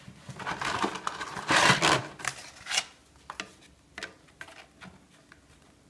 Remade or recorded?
recorded